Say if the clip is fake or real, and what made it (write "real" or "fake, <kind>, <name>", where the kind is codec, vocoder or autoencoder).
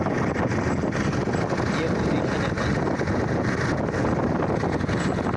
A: real